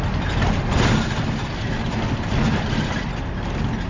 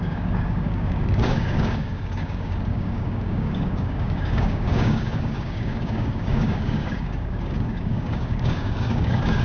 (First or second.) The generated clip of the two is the second